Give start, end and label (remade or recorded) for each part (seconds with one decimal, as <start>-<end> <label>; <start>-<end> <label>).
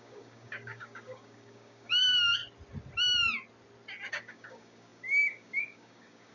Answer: 0.0-2.4 remade; 2.4-4.1 recorded; 4.1-6.3 remade